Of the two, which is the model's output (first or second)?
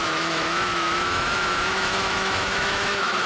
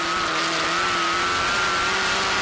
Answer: first